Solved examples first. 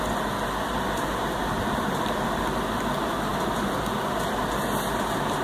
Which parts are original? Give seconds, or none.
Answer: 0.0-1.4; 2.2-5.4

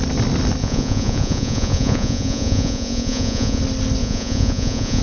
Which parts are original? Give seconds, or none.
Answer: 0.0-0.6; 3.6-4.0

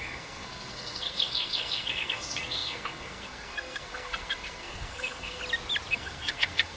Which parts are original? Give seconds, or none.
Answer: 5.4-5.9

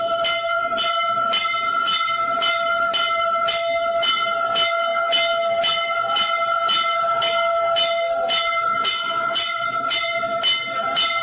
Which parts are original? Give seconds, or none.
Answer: 0.0-11.2